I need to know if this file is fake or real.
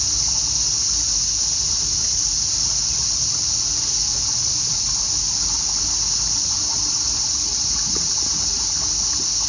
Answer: real